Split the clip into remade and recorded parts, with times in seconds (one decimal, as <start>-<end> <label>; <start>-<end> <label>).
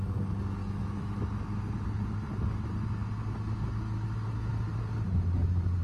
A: 0.0-0.6 recorded; 0.6-1.2 remade; 1.2-5.8 recorded